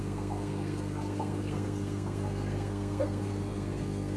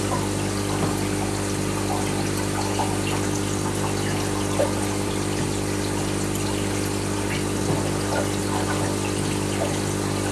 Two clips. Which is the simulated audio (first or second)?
first